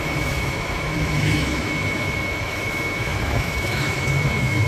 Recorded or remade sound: remade